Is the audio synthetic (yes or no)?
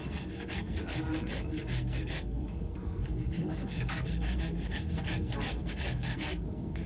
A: yes